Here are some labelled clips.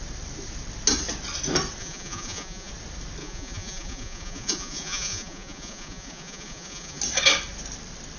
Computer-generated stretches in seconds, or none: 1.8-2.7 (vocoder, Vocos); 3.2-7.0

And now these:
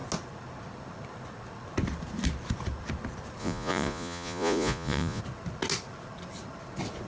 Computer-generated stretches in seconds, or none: 3.4-5.2 (vocoder, Vocos)

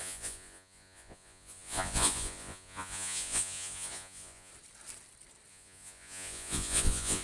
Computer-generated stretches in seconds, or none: 0.0-4.5 (vocoder, Vocos); 5.5-7.2

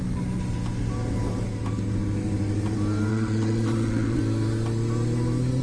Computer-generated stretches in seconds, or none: 3.1-4.2 (vocoder, Vocos)

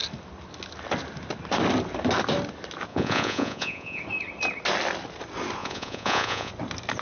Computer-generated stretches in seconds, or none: 2.9-4.0 (vocoder, Vocos); 5.6-6.5